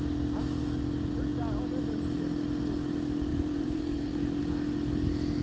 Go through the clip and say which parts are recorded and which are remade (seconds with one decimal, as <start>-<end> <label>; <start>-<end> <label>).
0.0-3.3 recorded; 3.3-4.4 remade; 4.4-5.4 recorded